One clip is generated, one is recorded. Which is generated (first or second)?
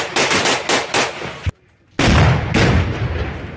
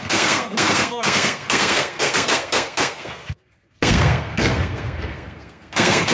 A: second